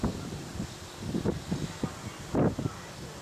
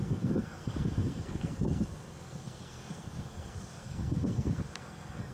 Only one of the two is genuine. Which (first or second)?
first